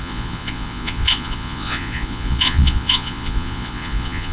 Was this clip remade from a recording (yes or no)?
yes